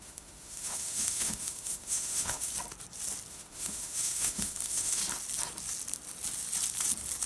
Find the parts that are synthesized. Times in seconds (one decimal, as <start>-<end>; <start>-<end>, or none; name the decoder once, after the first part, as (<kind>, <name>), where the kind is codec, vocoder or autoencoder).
0.0-2.5 (autoencoder, DAC-VAE); 3.3-5.0